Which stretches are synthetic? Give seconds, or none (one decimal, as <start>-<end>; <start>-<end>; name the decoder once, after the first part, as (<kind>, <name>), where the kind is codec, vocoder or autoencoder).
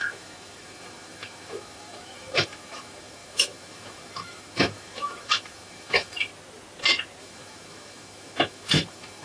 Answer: 0.0-6.3 (autoencoder, DAC-VAE); 7.2-9.2